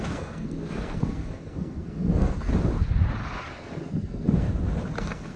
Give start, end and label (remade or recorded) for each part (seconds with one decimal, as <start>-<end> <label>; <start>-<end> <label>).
0.0-2.5 remade; 2.5-3.5 recorded; 3.5-4.5 remade; 4.5-5.0 recorded; 5.0-5.4 remade